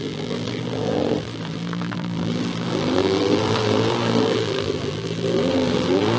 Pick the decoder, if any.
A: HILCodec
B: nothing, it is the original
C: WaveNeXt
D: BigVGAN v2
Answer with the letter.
D